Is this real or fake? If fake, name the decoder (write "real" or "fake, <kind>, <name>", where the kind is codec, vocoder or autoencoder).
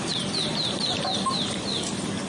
real